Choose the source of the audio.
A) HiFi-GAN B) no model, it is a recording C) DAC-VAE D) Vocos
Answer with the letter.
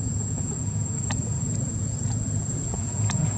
D